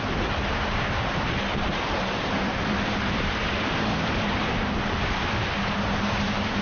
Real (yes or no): no